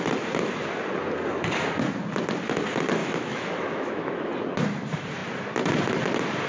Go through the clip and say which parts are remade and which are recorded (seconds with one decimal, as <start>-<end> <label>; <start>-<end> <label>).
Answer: 0.0-3.0 recorded; 3.0-4.3 remade; 4.3-6.5 recorded